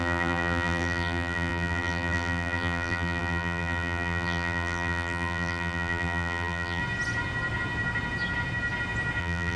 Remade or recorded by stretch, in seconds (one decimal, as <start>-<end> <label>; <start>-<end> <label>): 0.0-6.8 remade; 6.8-9.2 recorded; 9.2-9.6 remade